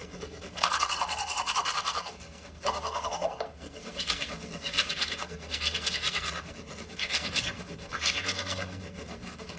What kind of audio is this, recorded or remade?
remade